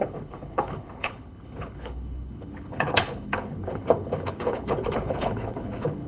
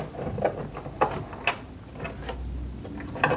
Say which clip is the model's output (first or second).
first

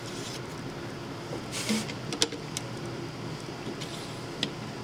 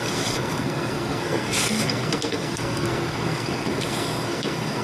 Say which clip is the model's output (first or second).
second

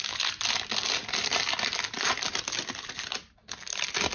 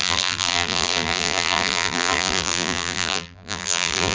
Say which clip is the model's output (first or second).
second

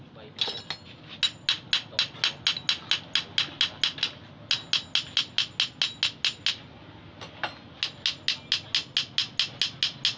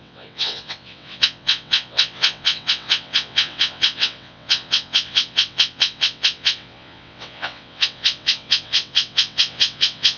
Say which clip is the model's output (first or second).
second